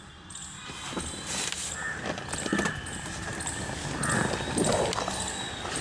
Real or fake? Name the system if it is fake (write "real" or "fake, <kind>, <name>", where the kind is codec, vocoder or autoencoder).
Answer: real